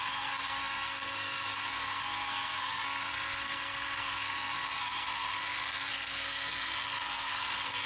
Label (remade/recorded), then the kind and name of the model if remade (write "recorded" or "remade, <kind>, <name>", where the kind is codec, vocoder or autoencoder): remade, codec, SNAC